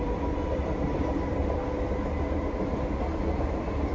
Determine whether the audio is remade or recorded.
recorded